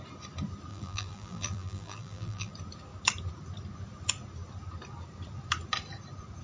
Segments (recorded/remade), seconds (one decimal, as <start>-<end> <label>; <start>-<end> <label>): 0.0-0.7 recorded; 0.7-2.5 remade; 2.5-6.4 recorded